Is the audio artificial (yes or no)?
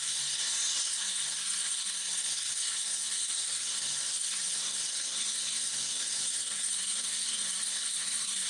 yes